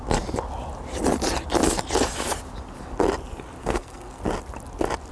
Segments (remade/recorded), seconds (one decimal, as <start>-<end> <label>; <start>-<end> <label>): 0.0-3.6 recorded; 3.6-4.2 remade; 4.2-5.1 recorded